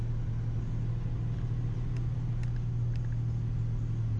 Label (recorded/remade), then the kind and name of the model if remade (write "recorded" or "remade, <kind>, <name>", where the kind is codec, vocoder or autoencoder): recorded